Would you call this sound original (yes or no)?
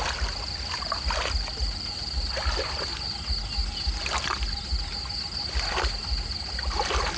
yes